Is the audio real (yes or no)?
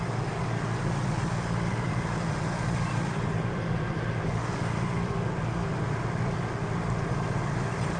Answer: yes